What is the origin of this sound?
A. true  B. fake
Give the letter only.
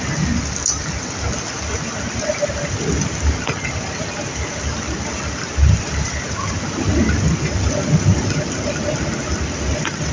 A